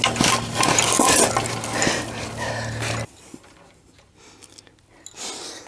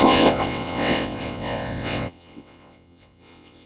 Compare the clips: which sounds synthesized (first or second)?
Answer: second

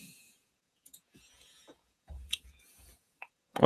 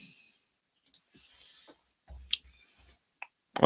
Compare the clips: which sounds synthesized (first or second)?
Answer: first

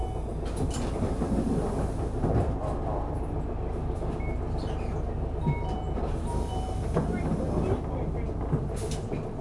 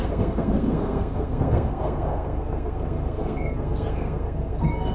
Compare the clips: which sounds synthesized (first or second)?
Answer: second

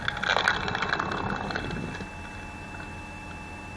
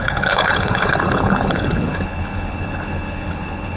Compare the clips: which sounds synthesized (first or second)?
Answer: second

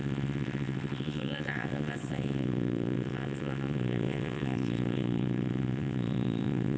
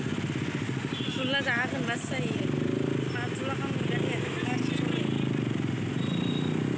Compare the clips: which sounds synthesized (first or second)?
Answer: first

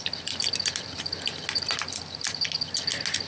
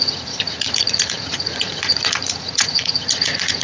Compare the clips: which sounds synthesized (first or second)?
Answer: second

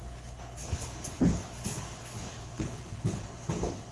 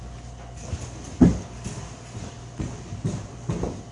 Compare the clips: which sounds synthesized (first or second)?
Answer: first